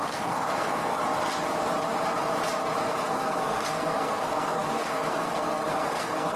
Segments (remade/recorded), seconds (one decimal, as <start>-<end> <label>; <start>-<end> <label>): 0.0-1.0 remade; 1.0-2.9 recorded; 2.9-6.4 remade